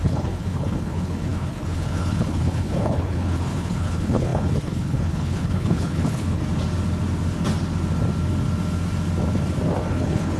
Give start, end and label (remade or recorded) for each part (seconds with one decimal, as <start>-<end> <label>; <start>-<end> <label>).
0.0-6.4 remade; 6.4-9.9 recorded; 9.9-10.4 remade